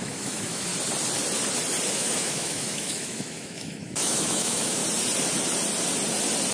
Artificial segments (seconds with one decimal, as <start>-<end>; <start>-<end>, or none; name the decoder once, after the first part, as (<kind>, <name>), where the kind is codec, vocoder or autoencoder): 0.0-0.7 (autoencoder, DAC-VAE); 1.9-4.8